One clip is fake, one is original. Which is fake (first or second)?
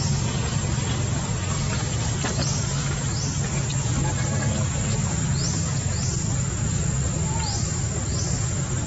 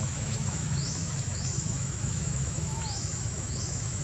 second